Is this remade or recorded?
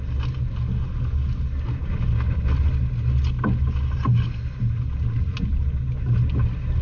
recorded